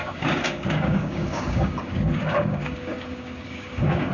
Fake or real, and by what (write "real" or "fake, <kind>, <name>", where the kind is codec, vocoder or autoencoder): fake, codec, DAC